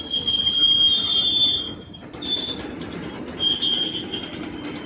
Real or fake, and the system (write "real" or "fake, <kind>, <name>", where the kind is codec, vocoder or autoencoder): real